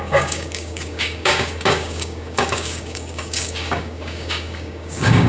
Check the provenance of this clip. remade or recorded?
remade